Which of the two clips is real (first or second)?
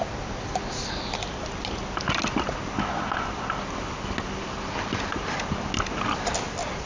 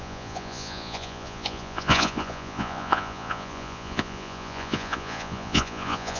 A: first